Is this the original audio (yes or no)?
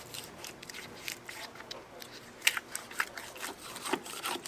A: yes